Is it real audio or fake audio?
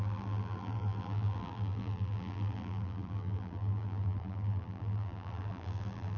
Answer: fake